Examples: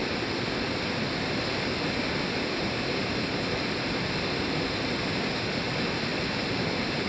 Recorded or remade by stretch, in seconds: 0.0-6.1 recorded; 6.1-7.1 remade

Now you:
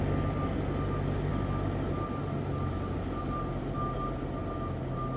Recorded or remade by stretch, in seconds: 0.0-5.2 recorded

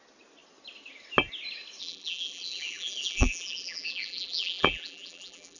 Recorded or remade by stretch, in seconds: 0.0-1.8 recorded; 1.8-5.6 remade

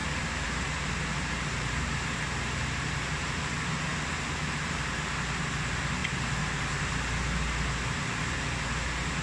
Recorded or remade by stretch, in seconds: 0.0-3.4 remade; 3.4-9.2 recorded

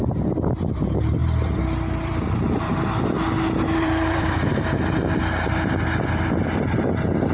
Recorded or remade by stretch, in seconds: 0.0-1.2 recorded; 1.2-5.0 remade; 5.0-7.3 recorded

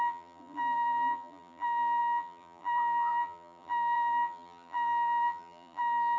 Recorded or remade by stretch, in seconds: 0.0-6.2 remade

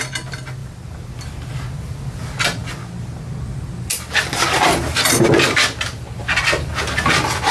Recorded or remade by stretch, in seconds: 0.0-0.6 recorded; 0.6-2.0 remade; 2.0-7.5 recorded